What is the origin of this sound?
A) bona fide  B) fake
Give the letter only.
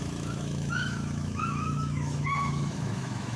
B